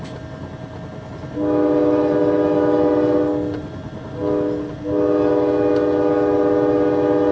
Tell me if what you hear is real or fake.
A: real